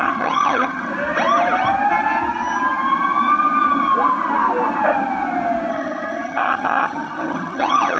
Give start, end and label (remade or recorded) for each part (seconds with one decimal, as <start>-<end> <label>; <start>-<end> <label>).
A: 0.0-0.9 remade; 0.9-5.7 recorded; 5.7-8.0 remade